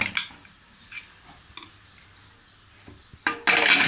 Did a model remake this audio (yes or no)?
no